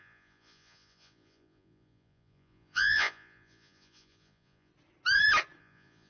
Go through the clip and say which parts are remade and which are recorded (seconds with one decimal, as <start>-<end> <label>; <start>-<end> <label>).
0.0-4.7 remade; 4.7-5.6 recorded; 5.6-6.1 remade

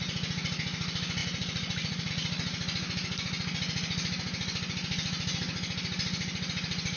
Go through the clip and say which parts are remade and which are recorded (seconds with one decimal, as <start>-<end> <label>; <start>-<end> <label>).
0.0-1.2 recorded; 1.2-2.1 remade; 2.1-7.0 recorded

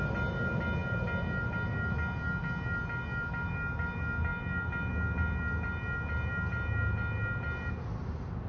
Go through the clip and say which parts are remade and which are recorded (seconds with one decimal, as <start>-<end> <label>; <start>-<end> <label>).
0.0-8.5 recorded

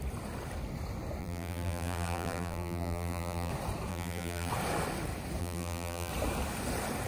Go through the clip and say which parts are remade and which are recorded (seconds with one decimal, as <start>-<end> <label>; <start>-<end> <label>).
0.0-1.2 recorded; 1.2-3.5 remade; 3.5-3.9 recorded; 3.9-4.5 remade; 4.5-5.4 recorded; 5.4-6.1 remade; 6.1-7.1 recorded

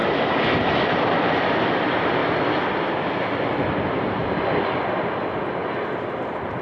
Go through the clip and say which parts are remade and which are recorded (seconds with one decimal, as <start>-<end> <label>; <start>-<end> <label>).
0.0-2.2 remade; 2.2-2.9 recorded; 2.9-4.2 remade; 4.2-4.8 recorded; 4.8-5.6 remade; 5.6-6.1 recorded; 6.1-6.6 remade